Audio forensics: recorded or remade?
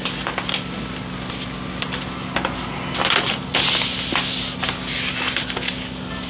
recorded